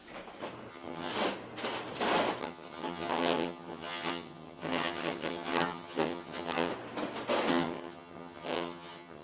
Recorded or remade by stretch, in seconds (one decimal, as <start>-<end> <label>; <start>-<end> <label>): 0.0-0.7 recorded; 0.7-1.1 remade; 1.1-2.4 recorded; 2.4-6.7 remade; 6.7-7.5 recorded; 7.5-9.2 remade